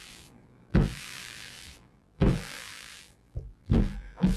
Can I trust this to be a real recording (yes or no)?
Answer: no